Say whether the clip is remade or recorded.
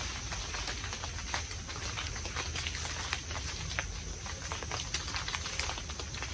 recorded